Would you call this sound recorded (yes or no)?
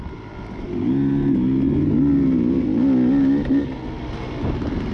yes